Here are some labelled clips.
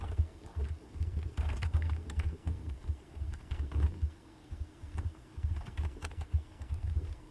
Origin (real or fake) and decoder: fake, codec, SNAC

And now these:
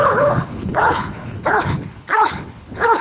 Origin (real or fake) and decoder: fake, codec, HILCodec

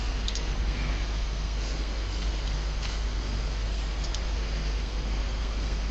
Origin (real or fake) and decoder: fake, codec, SNAC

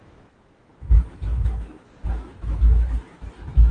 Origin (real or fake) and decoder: fake, autoencoder, DAC-VAE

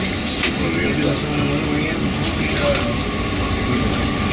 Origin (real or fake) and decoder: real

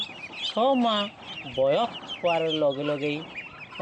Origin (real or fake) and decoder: real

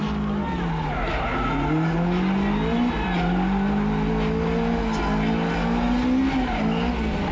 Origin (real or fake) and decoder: real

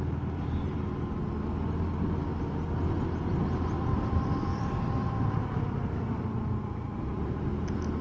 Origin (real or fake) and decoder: real